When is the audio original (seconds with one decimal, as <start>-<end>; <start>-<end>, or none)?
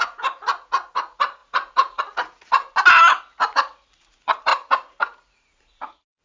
2.6-3.2